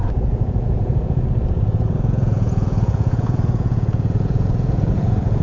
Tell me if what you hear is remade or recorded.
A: remade